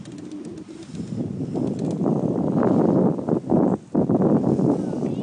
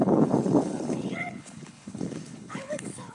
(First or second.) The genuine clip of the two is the first